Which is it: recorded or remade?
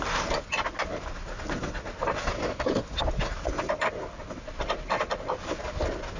recorded